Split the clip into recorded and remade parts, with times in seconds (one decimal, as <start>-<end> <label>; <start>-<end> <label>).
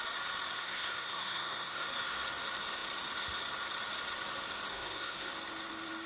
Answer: 0.0-0.6 recorded; 0.6-1.9 remade; 1.9-4.7 recorded; 4.7-5.3 remade; 5.3-6.1 recorded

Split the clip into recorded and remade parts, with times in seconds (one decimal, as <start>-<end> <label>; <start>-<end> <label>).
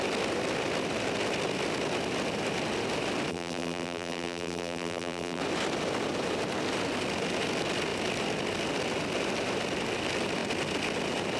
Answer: 0.0-3.3 recorded; 3.3-5.4 remade; 5.4-11.4 recorded